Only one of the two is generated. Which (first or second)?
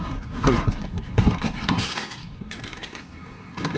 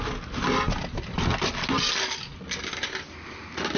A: first